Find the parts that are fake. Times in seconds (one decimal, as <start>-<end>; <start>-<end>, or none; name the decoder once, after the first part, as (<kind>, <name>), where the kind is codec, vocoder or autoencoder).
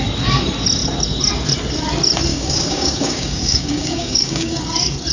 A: 2.3-4.6 (codec, DAC)